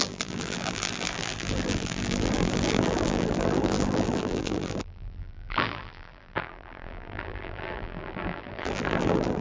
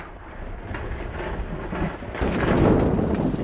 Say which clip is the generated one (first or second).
first